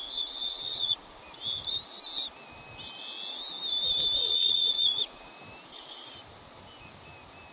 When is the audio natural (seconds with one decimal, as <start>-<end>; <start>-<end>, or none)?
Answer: 1.2-4.2; 5.3-7.5